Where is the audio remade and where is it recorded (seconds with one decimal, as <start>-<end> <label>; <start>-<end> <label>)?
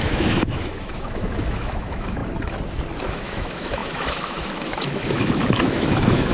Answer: 0.0-2.2 remade; 2.2-3.1 recorded; 3.1-6.3 remade